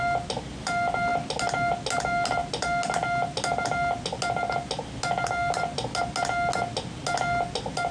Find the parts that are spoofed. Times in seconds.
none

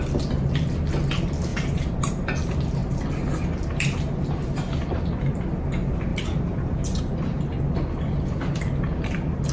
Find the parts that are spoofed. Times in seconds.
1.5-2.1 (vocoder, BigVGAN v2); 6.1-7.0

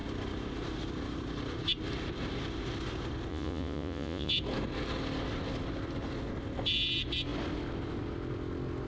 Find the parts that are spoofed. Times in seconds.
3.3-4.3 (vocoder, Vocos)